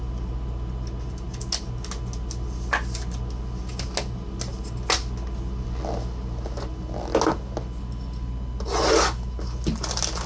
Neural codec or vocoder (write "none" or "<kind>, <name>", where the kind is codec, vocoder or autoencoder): none